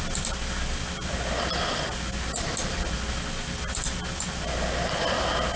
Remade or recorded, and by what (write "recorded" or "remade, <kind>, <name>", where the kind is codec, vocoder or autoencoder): recorded